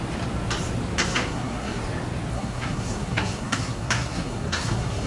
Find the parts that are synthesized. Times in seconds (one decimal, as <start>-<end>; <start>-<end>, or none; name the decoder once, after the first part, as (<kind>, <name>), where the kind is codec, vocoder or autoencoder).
1.0-1.8 (codec, SNAC); 2.3-5.1